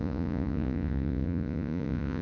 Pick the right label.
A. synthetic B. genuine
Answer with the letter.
A